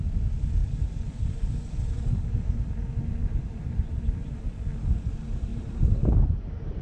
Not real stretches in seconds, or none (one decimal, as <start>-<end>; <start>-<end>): 3.2-4.4; 5.5-6.8